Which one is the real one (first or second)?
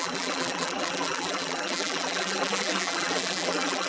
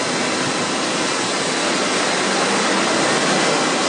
second